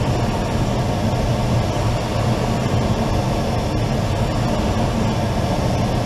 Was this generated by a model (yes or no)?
no